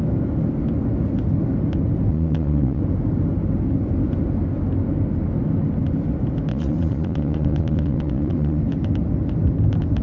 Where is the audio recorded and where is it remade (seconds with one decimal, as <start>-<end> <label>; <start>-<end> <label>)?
0.0-2.1 recorded; 2.1-2.8 remade; 2.8-6.5 recorded; 6.5-8.6 remade; 8.6-10.0 recorded